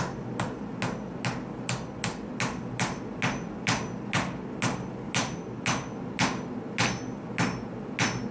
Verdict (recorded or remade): recorded